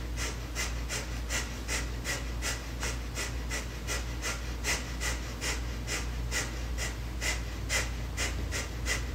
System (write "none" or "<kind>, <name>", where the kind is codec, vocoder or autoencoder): none